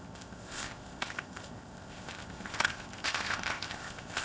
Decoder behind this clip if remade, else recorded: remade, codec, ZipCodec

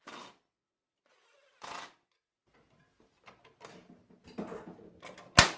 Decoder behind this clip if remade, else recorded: recorded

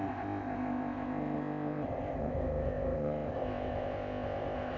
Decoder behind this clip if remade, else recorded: remade, codec, ZipCodec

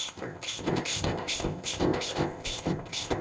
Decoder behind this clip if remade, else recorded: remade, codec, ZipCodec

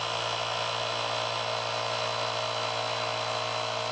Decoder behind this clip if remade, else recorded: recorded